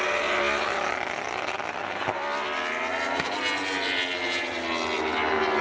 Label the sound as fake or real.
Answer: real